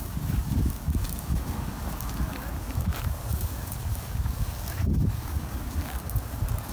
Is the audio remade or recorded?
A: remade